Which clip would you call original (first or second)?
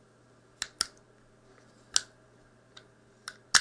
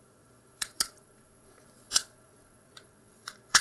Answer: first